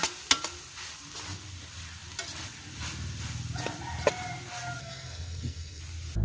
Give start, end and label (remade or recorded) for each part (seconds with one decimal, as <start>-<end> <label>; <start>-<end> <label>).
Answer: 0.0-4.8 recorded; 4.8-5.8 remade; 5.8-6.2 recorded